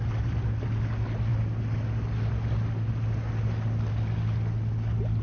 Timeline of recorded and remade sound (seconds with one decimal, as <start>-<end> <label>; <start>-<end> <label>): 0.0-5.2 recorded